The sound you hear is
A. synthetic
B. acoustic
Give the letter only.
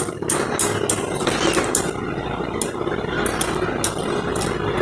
B